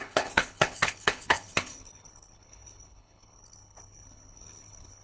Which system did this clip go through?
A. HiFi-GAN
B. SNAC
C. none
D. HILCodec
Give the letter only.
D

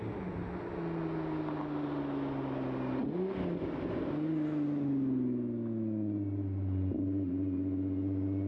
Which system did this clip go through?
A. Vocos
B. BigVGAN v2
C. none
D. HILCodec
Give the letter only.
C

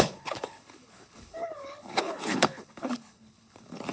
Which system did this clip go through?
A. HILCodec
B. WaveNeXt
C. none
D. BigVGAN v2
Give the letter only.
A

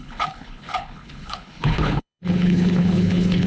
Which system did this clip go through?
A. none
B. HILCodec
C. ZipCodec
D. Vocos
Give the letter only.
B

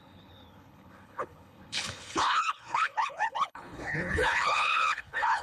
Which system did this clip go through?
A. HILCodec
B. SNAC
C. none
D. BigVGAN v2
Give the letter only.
A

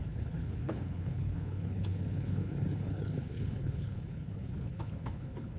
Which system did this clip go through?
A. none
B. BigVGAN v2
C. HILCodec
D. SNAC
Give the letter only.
C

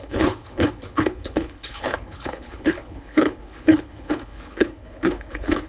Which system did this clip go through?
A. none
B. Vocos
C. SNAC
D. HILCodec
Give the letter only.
D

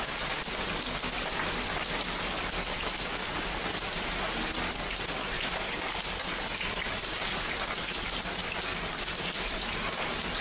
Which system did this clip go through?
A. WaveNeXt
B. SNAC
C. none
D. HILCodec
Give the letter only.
C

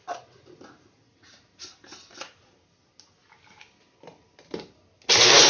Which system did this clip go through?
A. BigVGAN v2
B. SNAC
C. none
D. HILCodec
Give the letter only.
C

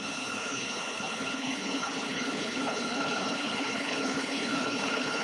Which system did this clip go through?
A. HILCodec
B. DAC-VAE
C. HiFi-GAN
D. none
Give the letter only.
A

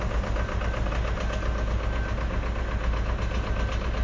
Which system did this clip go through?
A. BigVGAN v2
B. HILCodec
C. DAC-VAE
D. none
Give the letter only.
D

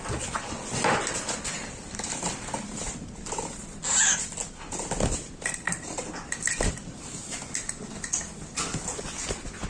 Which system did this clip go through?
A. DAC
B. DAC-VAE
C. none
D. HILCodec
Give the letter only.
C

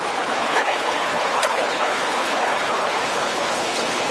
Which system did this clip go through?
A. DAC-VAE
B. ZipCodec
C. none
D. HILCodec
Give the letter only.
D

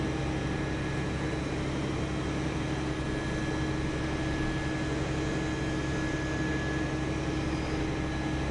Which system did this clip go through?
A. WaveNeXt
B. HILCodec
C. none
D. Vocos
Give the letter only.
C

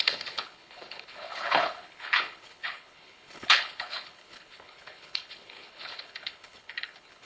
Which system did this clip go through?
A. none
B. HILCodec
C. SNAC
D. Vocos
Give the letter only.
B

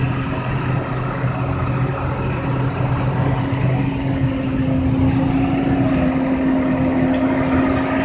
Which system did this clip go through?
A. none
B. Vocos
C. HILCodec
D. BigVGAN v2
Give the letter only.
A